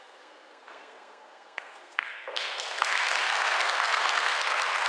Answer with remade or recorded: remade